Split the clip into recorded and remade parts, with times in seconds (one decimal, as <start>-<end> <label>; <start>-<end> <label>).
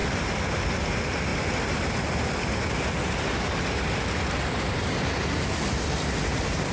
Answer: 0.0-6.7 recorded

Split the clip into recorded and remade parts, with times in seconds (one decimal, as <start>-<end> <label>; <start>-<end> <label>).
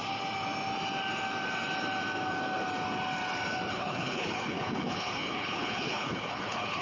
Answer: 0.0-3.7 recorded; 3.7-6.8 remade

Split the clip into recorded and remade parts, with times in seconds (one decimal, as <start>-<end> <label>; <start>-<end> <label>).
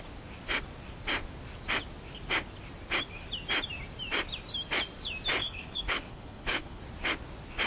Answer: 0.0-5.4 recorded; 5.4-6.8 remade; 6.8-7.7 recorded